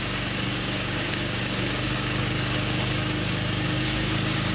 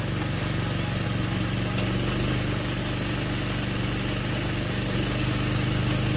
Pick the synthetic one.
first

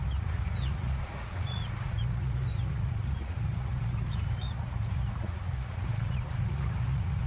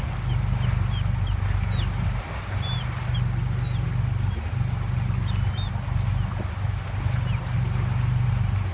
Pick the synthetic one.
first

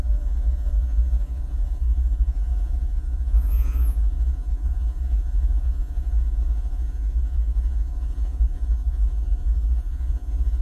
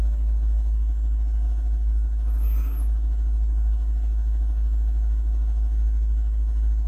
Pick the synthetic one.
first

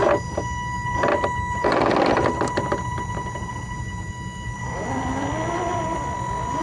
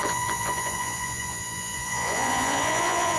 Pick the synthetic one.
second